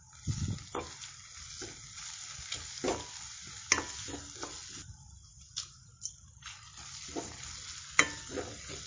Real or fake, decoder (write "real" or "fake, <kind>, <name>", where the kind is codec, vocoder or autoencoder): real